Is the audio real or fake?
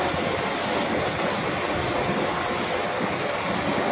real